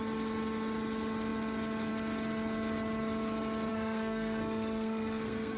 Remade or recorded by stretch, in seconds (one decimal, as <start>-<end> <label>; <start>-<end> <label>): 0.0-3.7 recorded; 3.7-5.6 remade